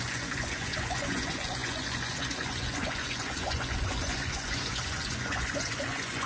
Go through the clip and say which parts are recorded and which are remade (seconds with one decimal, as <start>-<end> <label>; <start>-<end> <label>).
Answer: 0.0-6.3 remade